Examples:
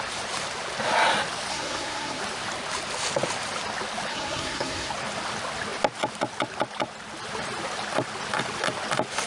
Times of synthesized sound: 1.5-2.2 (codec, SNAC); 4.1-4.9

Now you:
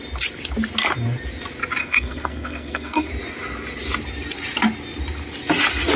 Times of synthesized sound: 1.8-3.1 (codec, SNAC)

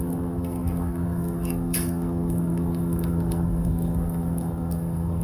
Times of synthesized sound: 0.0-5.2 (codec, SNAC)

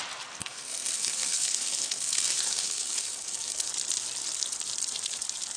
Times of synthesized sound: 0.4-3.7 (codec, SNAC)

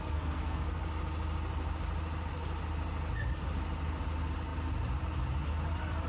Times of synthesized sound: 0.0-0.8 (codec, SNAC)